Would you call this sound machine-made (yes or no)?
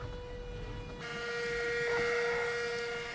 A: no